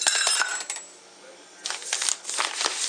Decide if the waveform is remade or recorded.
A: recorded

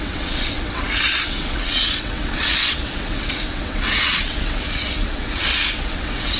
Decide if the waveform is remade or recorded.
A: remade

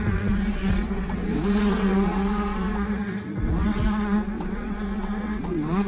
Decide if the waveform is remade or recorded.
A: remade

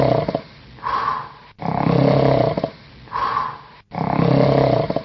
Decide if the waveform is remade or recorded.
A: recorded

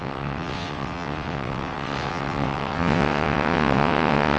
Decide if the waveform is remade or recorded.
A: remade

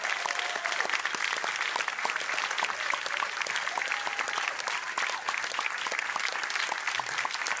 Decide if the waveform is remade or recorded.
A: recorded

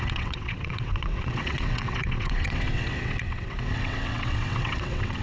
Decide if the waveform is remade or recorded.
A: remade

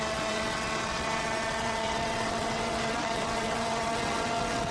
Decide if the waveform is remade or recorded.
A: remade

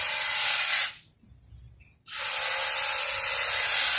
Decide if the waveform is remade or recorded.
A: recorded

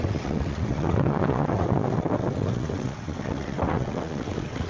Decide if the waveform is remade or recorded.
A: remade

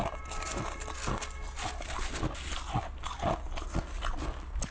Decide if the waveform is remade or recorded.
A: recorded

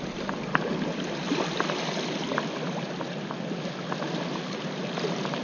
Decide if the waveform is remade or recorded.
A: recorded